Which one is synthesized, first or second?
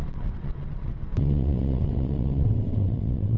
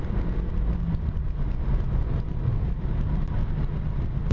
first